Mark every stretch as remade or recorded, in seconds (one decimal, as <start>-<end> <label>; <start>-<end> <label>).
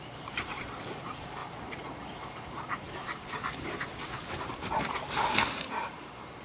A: 0.0-6.4 remade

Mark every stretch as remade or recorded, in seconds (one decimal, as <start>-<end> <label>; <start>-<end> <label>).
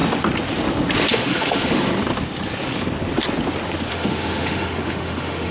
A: 0.0-1.1 recorded; 1.1-1.9 remade; 1.9-3.9 recorded; 3.9-5.5 remade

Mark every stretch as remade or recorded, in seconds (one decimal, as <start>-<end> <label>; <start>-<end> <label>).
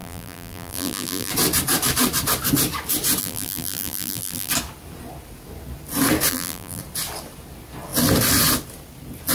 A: 0.0-1.3 remade; 1.3-3.2 recorded; 3.2-4.5 remade; 4.5-6.3 recorded; 6.3-6.8 remade; 6.8-9.3 recorded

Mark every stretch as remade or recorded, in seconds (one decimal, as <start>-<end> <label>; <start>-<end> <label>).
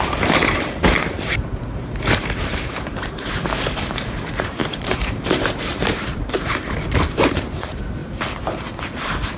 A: 0.0-8.0 remade; 8.0-8.9 recorded; 8.9-9.4 remade